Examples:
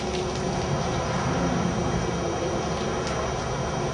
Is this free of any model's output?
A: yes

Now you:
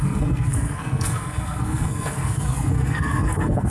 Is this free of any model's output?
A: no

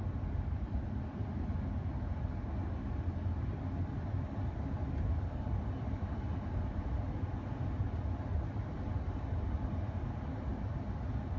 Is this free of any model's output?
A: yes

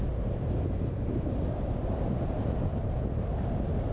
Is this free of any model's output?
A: yes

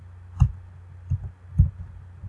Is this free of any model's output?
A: yes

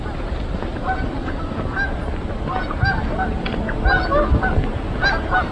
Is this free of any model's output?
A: yes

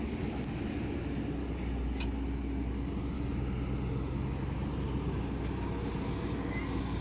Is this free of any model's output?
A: yes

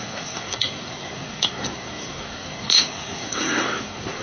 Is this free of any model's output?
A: no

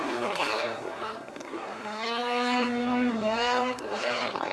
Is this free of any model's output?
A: no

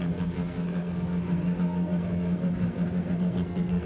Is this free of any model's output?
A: no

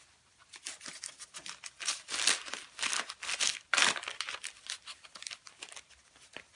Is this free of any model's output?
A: yes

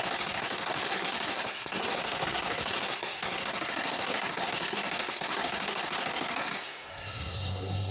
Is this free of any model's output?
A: no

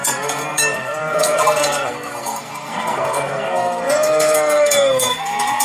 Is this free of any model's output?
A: no